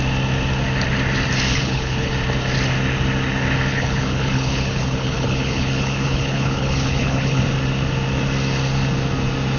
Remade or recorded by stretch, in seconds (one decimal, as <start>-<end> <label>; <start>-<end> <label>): 0.0-1.5 recorded; 1.5-2.1 remade; 2.1-3.7 recorded; 3.7-7.4 remade; 7.4-9.6 recorded